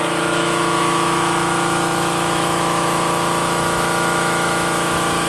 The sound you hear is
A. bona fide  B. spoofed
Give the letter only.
B